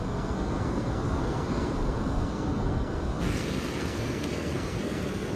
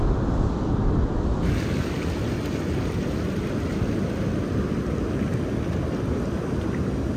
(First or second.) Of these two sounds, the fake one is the first